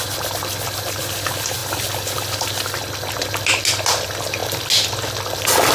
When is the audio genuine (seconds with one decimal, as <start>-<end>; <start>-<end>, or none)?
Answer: 0.0-5.7